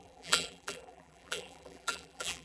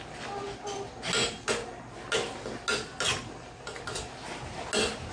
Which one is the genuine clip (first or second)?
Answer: second